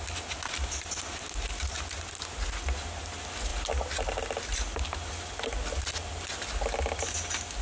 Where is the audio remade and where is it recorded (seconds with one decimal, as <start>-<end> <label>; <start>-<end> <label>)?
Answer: 0.0-7.6 recorded